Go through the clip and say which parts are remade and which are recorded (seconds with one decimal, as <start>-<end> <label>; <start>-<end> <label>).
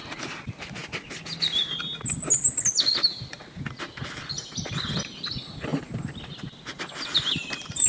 0.0-7.9 recorded